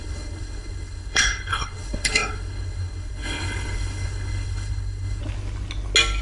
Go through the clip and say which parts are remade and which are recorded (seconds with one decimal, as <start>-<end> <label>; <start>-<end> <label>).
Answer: 0.0-5.2 remade; 5.2-6.2 recorded